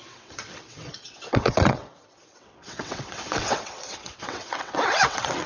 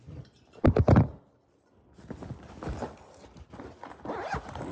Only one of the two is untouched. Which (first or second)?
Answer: second